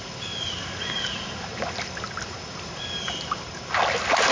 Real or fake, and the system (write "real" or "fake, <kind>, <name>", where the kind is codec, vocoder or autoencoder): real